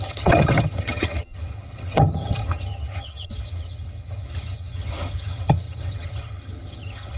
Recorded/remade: remade